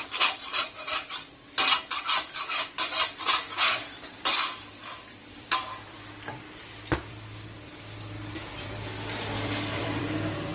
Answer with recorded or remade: remade